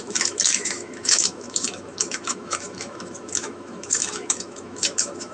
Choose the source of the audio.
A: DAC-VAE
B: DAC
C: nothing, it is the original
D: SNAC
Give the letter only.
A